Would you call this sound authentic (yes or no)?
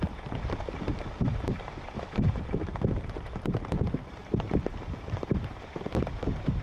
no